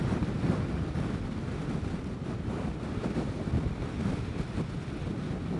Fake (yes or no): no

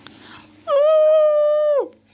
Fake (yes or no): no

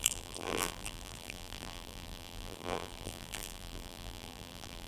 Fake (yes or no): yes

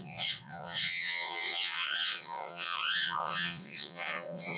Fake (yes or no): yes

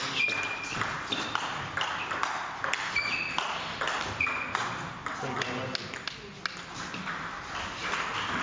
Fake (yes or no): no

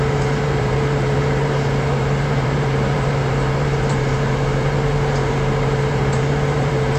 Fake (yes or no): yes